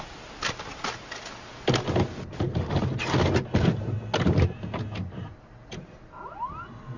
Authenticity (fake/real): real